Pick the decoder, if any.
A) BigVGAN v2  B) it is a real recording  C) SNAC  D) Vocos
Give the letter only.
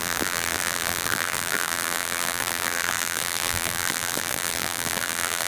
A